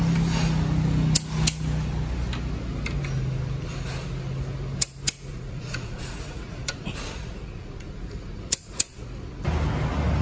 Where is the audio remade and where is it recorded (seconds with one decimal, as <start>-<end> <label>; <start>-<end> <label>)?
0.0-5.3 recorded; 5.3-9.0 remade; 9.0-10.2 recorded